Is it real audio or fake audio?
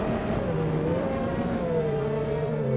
real